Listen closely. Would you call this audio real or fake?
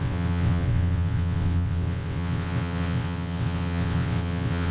fake